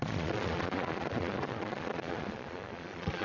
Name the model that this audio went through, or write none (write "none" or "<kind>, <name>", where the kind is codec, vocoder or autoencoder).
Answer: vocoder, Vocos